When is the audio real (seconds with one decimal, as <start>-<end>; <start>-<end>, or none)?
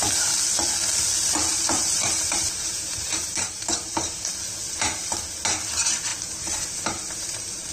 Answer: 0.0-1.5; 4.3-6.1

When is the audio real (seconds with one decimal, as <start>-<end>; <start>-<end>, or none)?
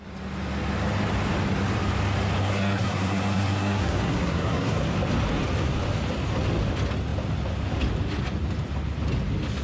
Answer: 0.0-2.4; 4.8-9.6